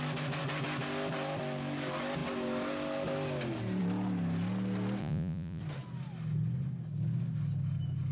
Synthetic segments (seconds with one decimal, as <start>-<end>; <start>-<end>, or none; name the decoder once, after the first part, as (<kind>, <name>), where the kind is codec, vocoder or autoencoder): 5.0-5.6 (vocoder, Vocos)